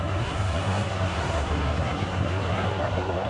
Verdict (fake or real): fake